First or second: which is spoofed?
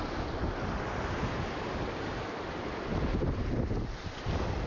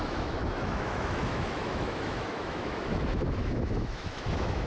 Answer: second